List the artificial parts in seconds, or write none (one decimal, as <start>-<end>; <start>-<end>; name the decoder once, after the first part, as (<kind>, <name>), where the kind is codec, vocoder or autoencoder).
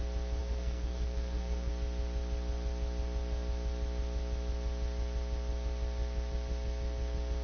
0.4-1.7 (codec, SNAC)